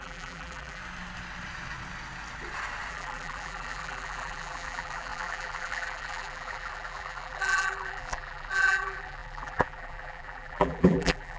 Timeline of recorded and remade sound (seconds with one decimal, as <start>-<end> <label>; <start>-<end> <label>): 0.0-0.8 remade; 0.8-2.9 recorded; 2.9-11.4 remade